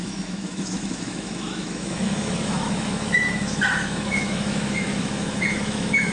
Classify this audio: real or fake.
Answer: fake